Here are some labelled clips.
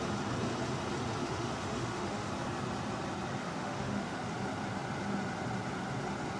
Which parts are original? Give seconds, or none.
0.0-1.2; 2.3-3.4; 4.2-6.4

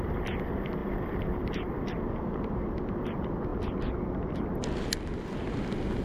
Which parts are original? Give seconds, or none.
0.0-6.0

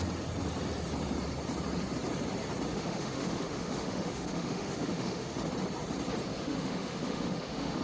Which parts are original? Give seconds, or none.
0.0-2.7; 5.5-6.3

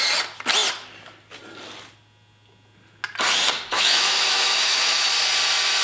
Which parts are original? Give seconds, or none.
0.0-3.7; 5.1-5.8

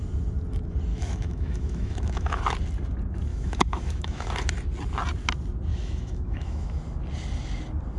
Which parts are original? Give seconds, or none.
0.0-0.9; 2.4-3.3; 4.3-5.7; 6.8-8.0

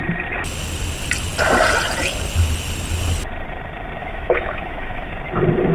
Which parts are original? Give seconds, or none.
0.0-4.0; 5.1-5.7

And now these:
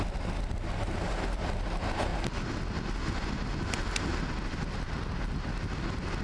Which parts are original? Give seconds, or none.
0.0-6.2

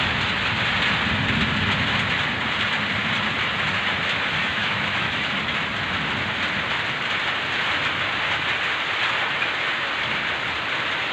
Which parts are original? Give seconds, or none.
0.0-4.4; 5.3-11.1